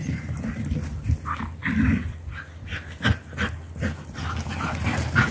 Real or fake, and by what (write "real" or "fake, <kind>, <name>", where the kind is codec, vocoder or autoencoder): real